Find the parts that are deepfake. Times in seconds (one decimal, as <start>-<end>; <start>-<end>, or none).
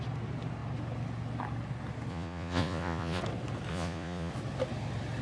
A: 2.1-3.2; 3.7-4.3